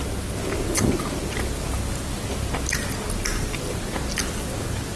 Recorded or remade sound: recorded